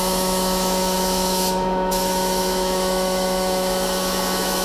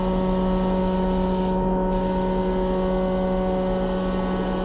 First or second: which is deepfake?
first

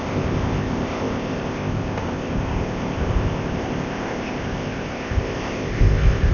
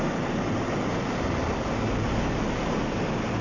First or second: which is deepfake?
first